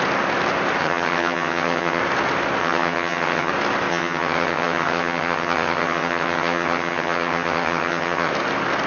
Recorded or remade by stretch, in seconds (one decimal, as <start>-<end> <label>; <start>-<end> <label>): 0.0-0.8 recorded; 0.8-2.0 remade; 2.0-2.6 recorded; 2.6-3.5 remade; 3.5-3.9 recorded; 3.9-8.3 remade; 8.3-8.9 recorded